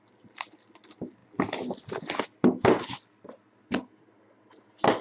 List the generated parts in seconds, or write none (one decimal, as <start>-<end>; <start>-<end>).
none

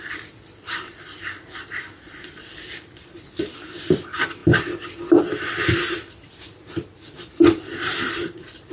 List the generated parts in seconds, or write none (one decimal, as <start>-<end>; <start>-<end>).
0.0-8.7

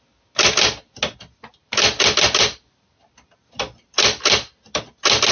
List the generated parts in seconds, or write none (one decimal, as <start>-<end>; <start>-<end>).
1.6-4.8

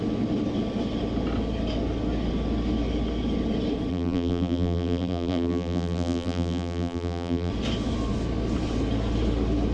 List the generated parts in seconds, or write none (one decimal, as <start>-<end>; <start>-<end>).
3.9-7.5

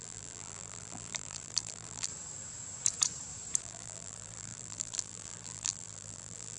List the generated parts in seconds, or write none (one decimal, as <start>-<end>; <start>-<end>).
0.0-2.1; 3.6-6.6